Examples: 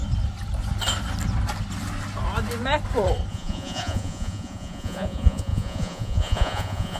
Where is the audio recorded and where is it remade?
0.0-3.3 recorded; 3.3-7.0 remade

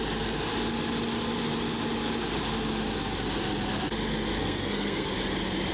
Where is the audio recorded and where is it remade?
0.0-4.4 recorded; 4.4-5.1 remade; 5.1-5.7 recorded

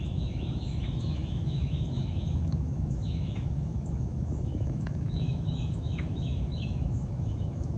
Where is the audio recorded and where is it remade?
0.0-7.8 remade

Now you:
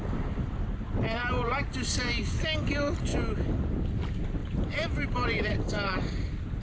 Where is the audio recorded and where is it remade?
0.0-4.4 recorded; 4.4-5.9 remade; 5.9-6.6 recorded

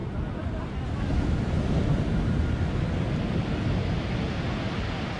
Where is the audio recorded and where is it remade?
0.0-5.2 recorded

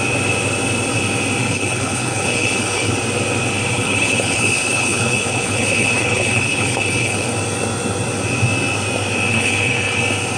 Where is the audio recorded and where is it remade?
0.0-1.4 recorded; 1.4-2.9 remade; 2.9-3.7 recorded; 3.7-7.3 remade; 7.3-9.3 recorded; 9.3-10.0 remade; 10.0-10.4 recorded